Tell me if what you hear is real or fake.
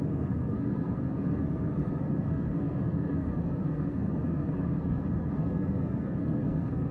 fake